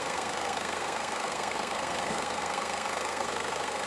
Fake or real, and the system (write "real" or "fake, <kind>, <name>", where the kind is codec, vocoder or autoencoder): fake, codec, SNAC